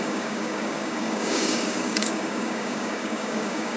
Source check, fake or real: fake